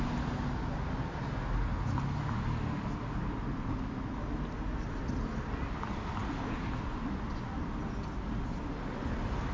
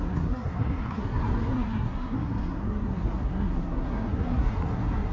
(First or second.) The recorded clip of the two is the first